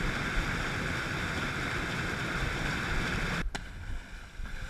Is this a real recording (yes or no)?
yes